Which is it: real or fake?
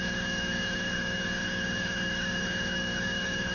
fake